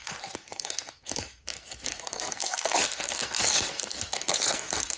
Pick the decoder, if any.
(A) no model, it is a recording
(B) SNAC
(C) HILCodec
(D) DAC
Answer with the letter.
B